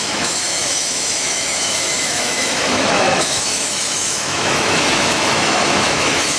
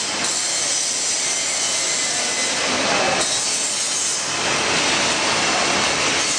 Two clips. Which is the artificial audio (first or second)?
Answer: first